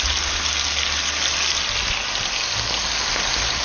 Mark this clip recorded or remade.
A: recorded